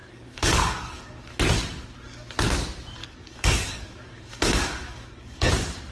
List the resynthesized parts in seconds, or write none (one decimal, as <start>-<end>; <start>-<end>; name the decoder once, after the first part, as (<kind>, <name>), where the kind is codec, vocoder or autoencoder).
0.0-1.4 (codec, DAC); 3.0-5.5